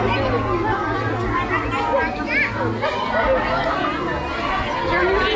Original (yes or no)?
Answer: yes